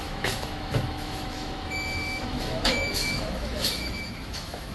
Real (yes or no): no